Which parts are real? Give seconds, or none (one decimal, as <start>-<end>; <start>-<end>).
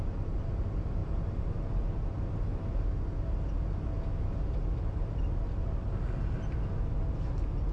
0.0-7.7